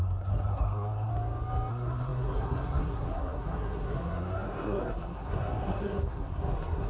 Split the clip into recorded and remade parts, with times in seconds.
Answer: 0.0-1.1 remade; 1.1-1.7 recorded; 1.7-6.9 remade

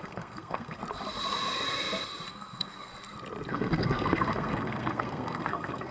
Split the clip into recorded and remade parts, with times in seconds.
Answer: 0.0-0.8 remade; 0.8-2.3 recorded; 2.3-2.9 remade; 2.9-3.5 recorded; 3.5-5.9 remade

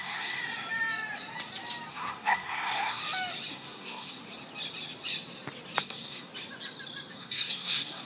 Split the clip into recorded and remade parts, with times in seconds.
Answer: 0.0-0.4 remade; 0.4-1.9 recorded; 1.9-3.0 remade; 3.0-3.5 recorded; 3.5-4.2 remade; 4.2-5.8 recorded; 5.8-6.3 remade; 6.3-7.1 recorded; 7.1-8.0 remade

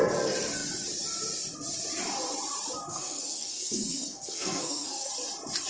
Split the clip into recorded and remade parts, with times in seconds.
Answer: 0.0-2.9 recorded; 2.9-5.1 remade; 5.1-5.7 recorded

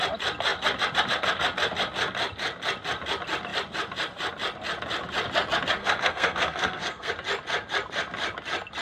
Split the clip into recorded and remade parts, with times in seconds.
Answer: 0.0-5.8 recorded; 5.8-7.1 remade; 7.1-8.8 recorded

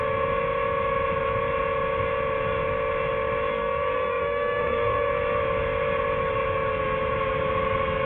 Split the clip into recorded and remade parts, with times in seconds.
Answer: 0.0-3.5 recorded; 3.5-5.1 remade; 5.1-8.1 recorded

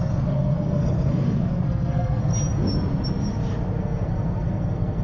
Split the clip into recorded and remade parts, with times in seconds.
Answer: 0.0-2.3 remade; 2.3-3.8 recorded; 3.8-5.0 remade

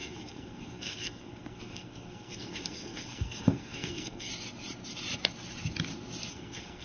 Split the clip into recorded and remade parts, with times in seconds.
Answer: 0.0-4.3 remade; 4.3-6.3 recorded; 6.3-6.8 remade